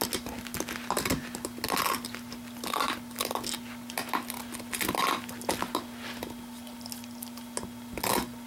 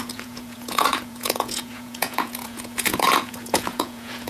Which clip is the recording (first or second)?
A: first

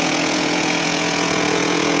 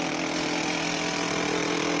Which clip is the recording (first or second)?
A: second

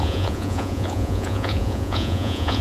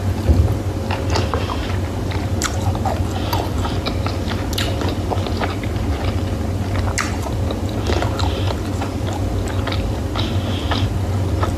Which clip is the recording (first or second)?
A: second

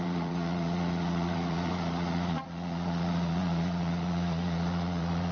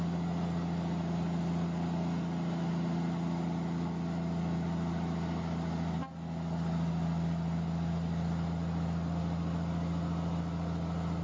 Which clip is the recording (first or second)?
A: second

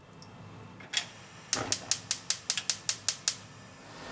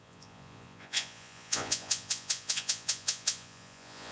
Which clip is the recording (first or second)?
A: first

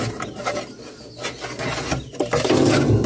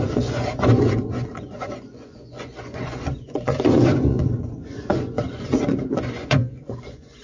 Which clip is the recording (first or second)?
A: first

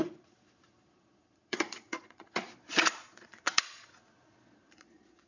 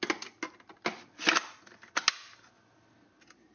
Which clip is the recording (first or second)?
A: second